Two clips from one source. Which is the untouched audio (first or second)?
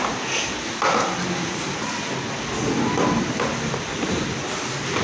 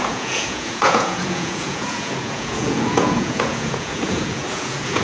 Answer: first